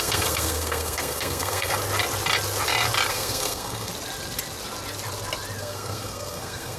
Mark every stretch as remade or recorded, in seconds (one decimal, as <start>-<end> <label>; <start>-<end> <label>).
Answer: 0.0-1.8 remade; 1.8-3.1 recorded; 3.1-3.9 remade; 3.9-5.6 recorded; 5.6-6.8 remade